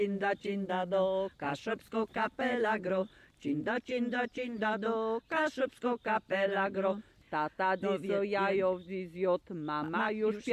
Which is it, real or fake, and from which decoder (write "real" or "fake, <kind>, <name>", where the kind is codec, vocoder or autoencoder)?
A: real